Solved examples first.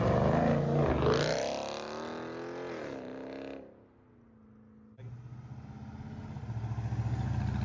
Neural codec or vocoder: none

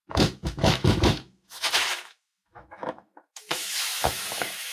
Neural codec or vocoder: autoencoder, DAC-VAE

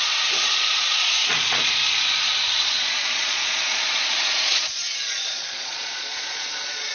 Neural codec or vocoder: vocoder, Vocos